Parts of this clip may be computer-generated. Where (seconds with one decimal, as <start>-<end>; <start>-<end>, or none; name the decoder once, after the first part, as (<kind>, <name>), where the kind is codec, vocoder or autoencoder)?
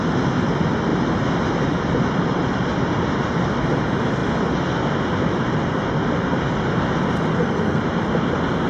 7.3-7.8 (codec, SNAC)